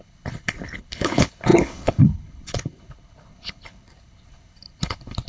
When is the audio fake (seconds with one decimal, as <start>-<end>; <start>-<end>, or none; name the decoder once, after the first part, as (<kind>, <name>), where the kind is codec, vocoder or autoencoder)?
0.0-5.3 (codec, HILCodec)